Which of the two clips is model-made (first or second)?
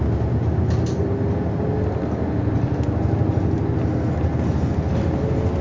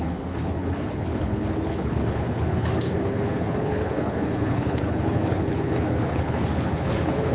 second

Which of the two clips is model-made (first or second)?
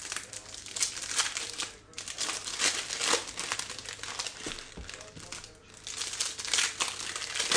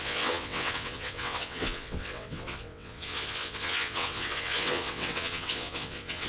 second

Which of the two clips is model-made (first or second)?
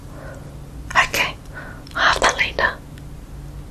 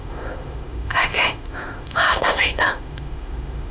second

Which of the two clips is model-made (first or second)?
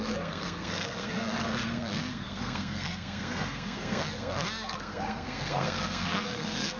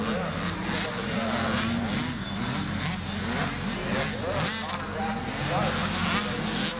first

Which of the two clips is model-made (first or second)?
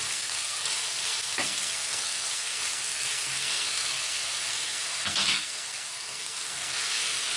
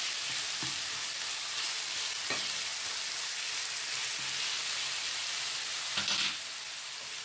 first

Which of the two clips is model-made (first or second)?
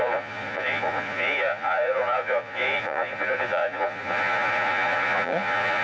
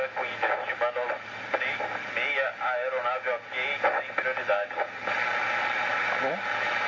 first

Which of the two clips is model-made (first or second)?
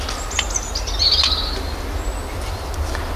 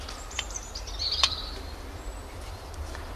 second